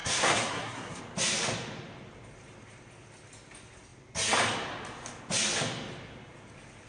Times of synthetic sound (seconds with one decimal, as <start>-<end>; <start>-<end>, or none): 0.0-1.0